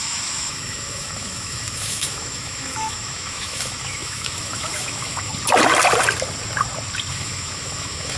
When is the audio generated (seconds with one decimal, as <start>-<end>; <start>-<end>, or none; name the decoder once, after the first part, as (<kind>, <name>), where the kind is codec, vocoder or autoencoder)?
0.0-5.3 (autoencoder, DAC-VAE); 7.1-8.2